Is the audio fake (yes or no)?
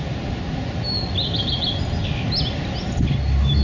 no